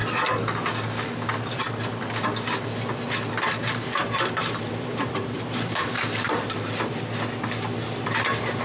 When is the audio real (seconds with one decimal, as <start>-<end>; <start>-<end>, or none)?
0.0-3.6; 7.1-8.6